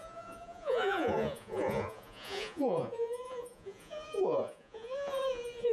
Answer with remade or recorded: remade